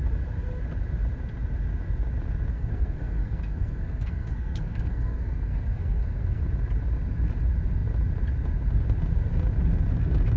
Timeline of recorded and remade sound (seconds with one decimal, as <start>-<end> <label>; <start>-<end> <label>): 0.0-2.5 recorded; 2.5-6.4 remade; 6.4-10.4 recorded

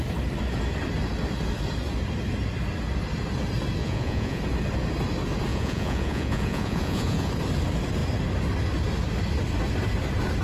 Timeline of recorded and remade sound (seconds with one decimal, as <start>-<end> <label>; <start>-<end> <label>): 0.0-3.8 recorded; 3.8-4.4 remade; 4.4-5.5 recorded; 5.5-7.3 remade; 7.3-10.4 recorded

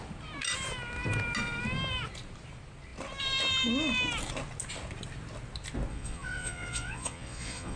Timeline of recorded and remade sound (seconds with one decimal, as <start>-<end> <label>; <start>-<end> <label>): 0.0-5.9 recorded; 5.9-7.8 remade